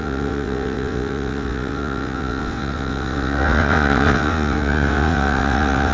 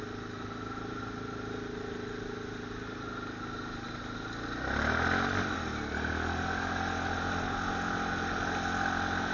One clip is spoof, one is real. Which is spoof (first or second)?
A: first